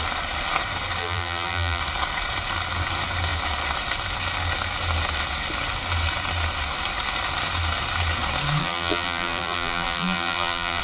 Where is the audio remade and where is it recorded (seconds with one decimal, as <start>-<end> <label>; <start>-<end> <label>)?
0.0-1.0 recorded; 1.0-1.8 remade; 1.8-8.6 recorded; 8.6-10.8 remade